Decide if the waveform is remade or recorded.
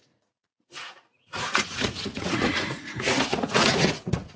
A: remade